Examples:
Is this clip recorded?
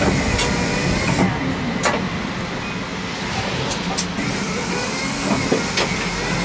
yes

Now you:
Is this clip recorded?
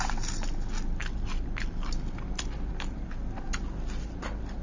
yes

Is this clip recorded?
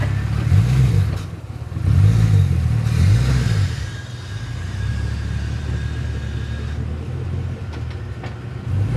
yes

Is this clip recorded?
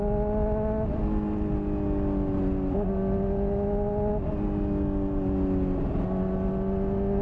yes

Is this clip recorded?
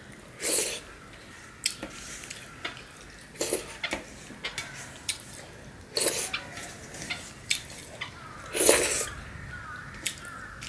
yes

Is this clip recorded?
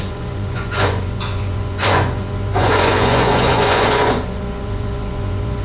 no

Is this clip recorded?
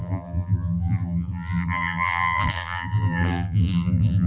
no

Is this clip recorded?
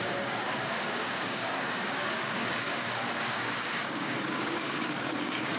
no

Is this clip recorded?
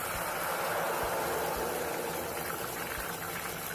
yes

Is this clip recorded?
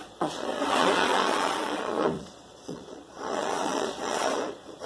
no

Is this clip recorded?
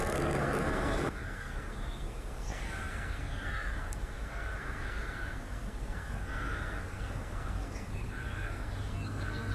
no